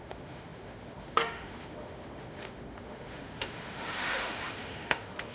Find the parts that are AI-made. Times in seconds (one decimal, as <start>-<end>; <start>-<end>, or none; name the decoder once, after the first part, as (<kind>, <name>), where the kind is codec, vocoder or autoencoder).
0.0-5.3 (autoencoder, DAC-VAE)